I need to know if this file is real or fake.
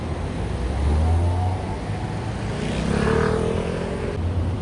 real